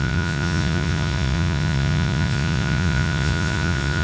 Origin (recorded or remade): remade